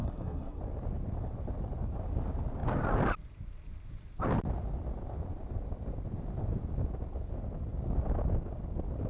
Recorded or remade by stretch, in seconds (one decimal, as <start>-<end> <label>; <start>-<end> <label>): 0.0-0.6 remade; 0.6-9.1 recorded